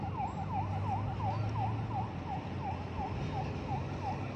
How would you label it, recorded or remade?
recorded